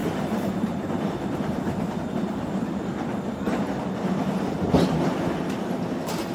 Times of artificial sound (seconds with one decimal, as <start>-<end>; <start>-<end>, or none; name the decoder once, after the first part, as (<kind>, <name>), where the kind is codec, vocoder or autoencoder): 0.0-2.5 (vocoder, BigVGAN v2)